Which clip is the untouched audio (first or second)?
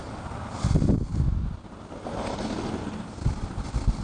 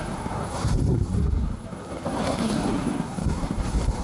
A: first